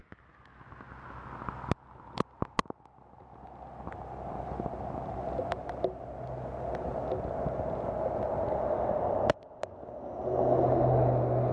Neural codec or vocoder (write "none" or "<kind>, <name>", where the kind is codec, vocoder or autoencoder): none